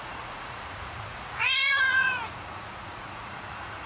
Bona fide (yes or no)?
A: no